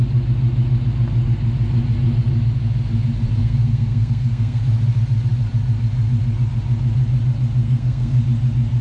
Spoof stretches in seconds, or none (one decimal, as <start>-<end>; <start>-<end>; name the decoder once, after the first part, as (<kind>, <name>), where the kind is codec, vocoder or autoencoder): 3.4-4.6 (codec, SNAC); 7.6-8.2